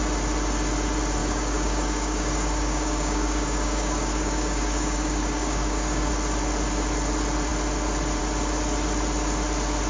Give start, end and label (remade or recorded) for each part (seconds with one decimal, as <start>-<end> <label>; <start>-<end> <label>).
0.0-1.2 recorded; 1.2-6.1 remade; 6.1-9.9 recorded